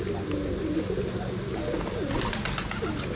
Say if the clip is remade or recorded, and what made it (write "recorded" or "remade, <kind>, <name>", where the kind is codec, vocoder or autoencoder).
recorded